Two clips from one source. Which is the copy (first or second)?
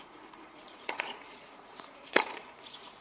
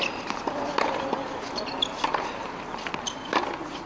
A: first